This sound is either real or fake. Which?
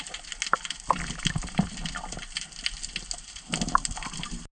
real